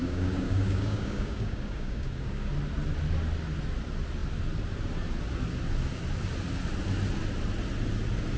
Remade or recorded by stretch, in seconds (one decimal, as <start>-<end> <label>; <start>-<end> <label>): 0.0-2.5 remade; 2.5-8.4 recorded